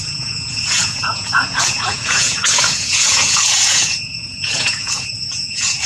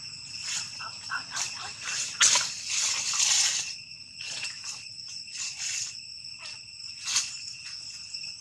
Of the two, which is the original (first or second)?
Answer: second